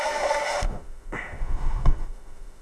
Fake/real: fake